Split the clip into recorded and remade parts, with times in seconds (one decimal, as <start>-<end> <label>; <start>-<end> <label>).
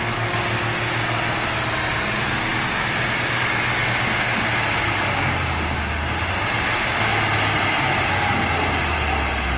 0.0-9.6 recorded